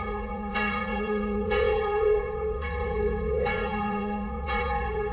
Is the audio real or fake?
fake